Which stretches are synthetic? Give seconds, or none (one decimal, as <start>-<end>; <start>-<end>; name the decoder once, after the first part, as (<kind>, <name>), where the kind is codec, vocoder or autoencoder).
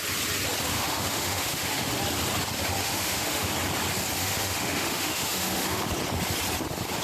0.7-1.9 (autoencoder, DAC-VAE); 2.8-3.5; 4.2-5.8